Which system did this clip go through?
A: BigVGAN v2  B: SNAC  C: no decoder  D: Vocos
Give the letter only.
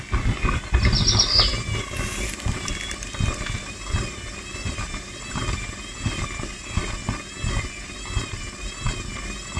C